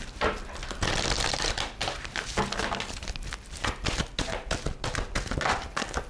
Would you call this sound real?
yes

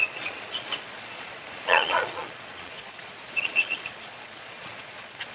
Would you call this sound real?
no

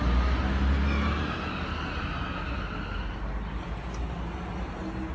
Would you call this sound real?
yes